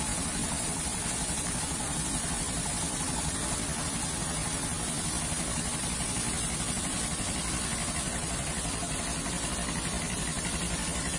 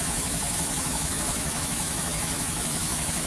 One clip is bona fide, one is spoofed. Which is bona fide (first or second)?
first